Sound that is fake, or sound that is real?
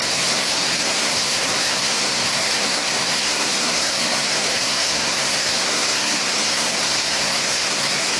fake